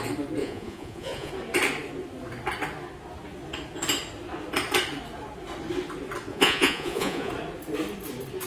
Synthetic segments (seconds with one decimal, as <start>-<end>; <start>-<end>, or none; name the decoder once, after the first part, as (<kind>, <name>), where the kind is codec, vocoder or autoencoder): 0.4-1.3 (vocoder, Vocos); 6.3-7.3